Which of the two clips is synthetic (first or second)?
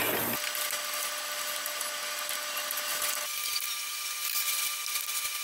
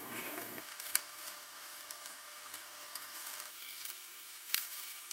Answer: second